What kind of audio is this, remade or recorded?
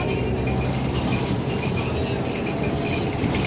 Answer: recorded